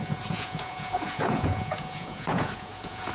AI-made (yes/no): yes